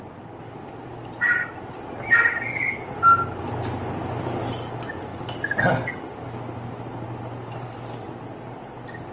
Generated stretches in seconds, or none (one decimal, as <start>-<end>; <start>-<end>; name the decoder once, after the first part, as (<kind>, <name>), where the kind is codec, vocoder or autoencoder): none